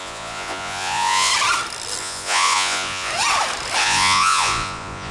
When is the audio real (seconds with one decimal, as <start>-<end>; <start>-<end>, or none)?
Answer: 1.3-2.0; 3.1-3.8